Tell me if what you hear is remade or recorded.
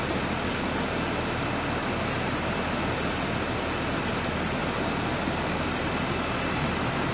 recorded